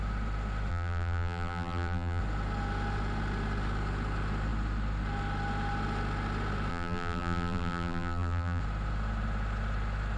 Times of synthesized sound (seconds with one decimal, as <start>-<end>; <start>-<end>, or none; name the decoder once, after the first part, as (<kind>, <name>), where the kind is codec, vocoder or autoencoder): 0.7-2.2 (vocoder, BigVGAN v2); 6.7-8.6